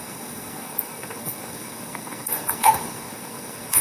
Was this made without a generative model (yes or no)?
no